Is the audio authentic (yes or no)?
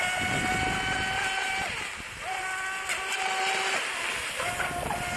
yes